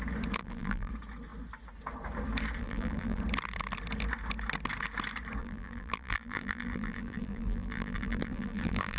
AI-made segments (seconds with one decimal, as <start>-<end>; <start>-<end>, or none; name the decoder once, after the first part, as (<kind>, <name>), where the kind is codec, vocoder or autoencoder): 0.4-0.9 (vocoder, BigVGAN v2); 2.6-3.2; 5.4-9.0